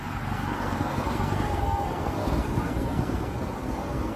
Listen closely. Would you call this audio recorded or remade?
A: remade